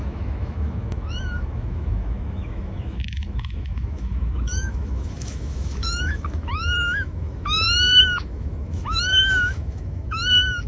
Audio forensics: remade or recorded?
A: remade